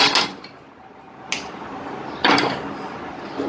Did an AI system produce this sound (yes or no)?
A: no